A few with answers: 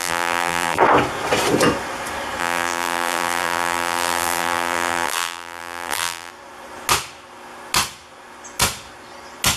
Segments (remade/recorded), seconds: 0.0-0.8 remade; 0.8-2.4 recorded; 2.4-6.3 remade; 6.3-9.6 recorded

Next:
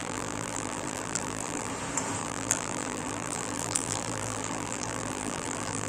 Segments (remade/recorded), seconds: 0.0-1.7 remade; 1.7-2.2 recorded; 2.2-5.9 remade

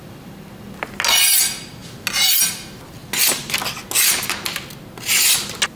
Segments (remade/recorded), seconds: 0.0-5.8 recorded

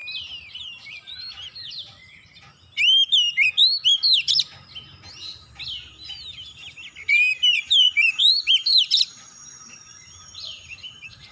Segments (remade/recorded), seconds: 0.0-0.5 recorded; 0.5-2.0 remade; 2.0-7.1 recorded; 7.1-11.3 remade